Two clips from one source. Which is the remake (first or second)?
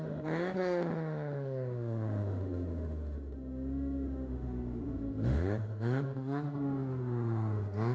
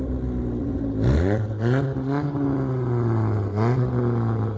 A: first